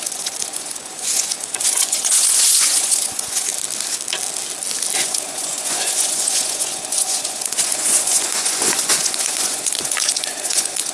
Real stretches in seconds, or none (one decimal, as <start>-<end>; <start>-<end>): 3.5-5.0